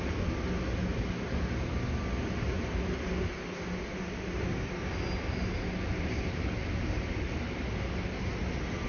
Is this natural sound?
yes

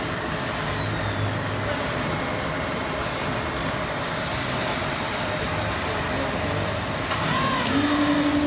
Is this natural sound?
yes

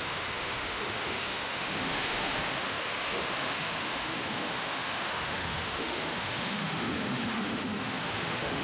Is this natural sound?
no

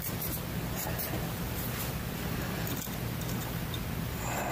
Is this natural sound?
yes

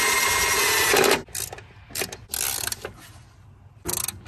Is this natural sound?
yes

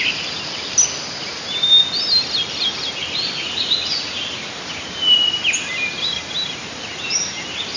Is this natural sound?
yes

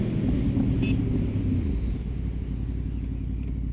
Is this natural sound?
yes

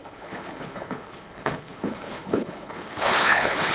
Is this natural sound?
no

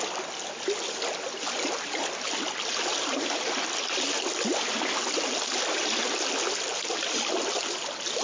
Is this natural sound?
yes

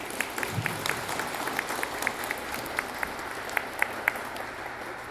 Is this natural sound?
yes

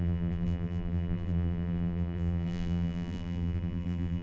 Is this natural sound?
no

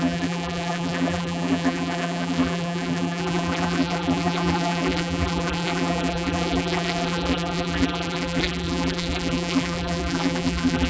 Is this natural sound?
no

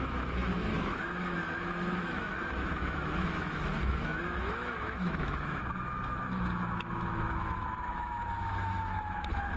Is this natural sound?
no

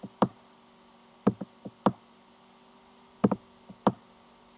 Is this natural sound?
yes